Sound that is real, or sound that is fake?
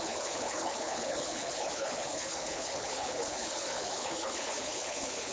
fake